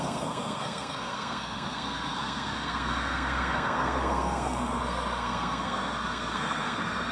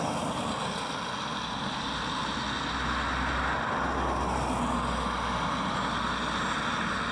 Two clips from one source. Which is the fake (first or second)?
first